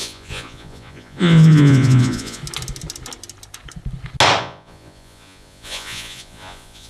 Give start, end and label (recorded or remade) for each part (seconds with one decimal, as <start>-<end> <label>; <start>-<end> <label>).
0.0-2.4 remade; 2.4-4.4 recorded; 4.4-6.9 remade